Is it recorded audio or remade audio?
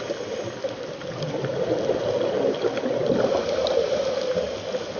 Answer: recorded